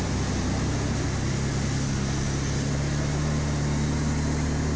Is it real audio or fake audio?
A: real